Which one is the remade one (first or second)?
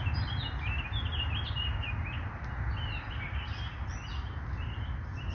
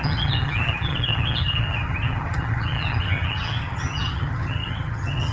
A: second